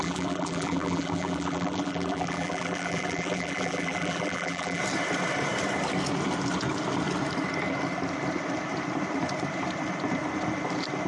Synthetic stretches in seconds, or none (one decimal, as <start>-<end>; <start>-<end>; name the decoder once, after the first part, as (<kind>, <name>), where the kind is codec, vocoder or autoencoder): 0.0-4.8 (vocoder, BigVGAN v2)